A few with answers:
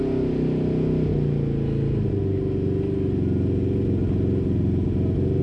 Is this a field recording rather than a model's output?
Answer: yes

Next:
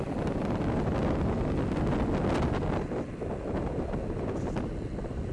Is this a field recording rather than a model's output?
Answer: yes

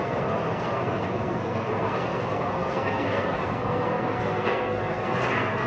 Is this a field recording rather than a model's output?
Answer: no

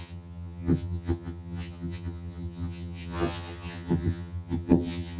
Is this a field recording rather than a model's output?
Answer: no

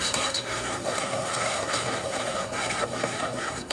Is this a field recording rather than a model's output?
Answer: no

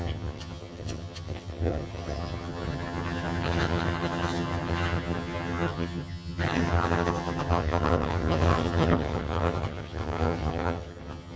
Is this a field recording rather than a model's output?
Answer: no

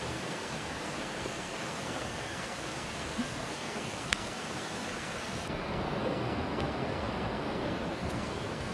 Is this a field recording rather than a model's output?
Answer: no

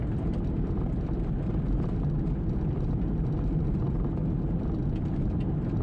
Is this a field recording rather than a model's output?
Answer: no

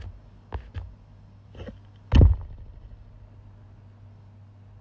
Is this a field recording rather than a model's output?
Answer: yes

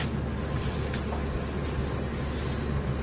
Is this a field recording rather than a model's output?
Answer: yes